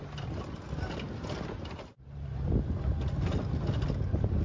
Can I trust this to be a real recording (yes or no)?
yes